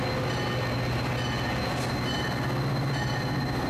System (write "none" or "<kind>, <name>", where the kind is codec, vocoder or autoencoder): none